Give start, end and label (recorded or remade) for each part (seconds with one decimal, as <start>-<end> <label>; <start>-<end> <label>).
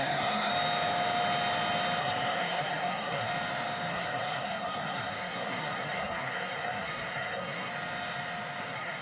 0.0-0.5 remade; 0.5-2.0 recorded; 2.0-3.3 remade; 3.3-3.9 recorded; 3.9-7.7 remade; 7.7-8.6 recorded; 8.6-9.0 remade